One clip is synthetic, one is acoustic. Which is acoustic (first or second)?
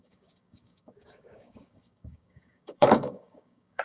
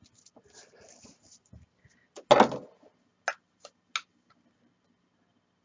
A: second